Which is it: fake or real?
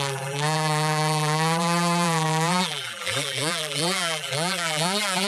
fake